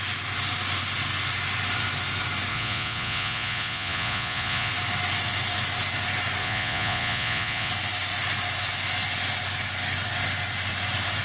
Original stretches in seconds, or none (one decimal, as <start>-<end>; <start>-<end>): 0.0-2.5; 4.7-6.4; 7.7-11.2